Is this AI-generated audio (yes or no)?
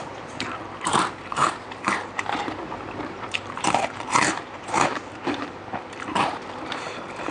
yes